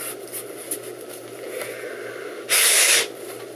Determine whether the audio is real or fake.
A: real